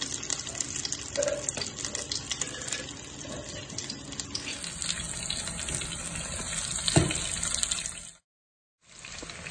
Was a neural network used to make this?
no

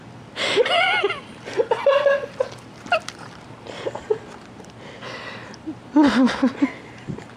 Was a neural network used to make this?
yes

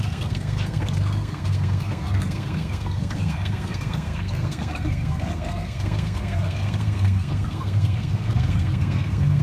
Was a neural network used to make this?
yes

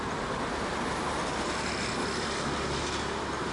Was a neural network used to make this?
no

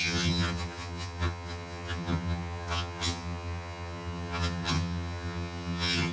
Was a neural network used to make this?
yes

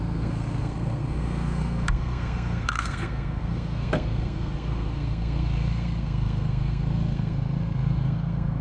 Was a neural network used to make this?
yes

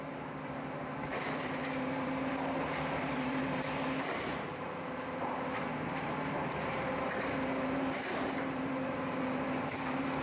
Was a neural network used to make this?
yes